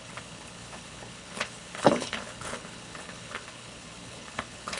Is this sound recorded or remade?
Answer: remade